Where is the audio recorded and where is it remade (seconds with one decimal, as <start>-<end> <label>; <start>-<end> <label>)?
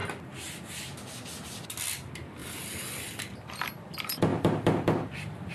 0.0-2.4 recorded; 2.4-3.7 remade; 3.7-4.3 recorded; 4.3-5.5 remade